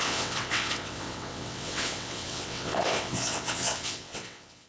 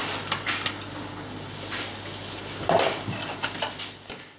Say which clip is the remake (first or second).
first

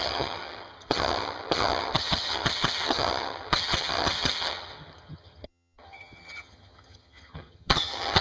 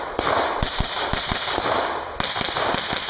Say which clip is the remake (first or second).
first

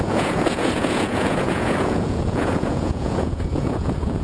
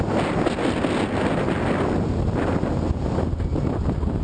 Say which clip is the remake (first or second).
first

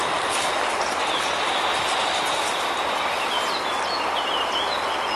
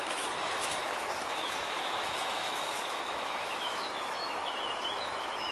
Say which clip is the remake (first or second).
second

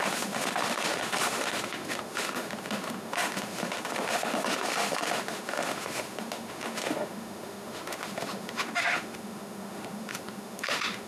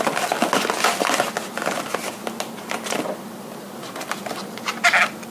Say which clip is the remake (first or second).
first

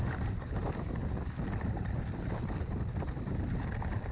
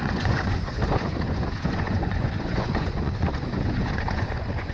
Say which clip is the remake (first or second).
second